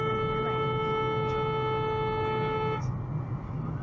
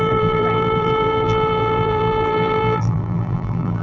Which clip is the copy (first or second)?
second